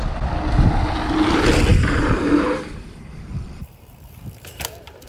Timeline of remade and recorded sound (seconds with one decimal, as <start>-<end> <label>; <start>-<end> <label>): 0.0-1.7 recorded; 1.7-5.1 remade